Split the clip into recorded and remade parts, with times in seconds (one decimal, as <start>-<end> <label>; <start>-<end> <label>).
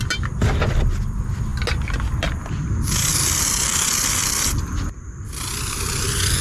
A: 0.0-6.4 recorded